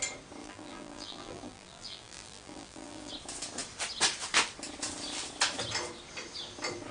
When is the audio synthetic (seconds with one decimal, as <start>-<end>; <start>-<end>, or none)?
0.4-3.1